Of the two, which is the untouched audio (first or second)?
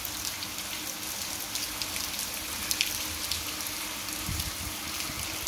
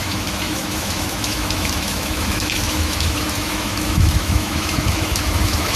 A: first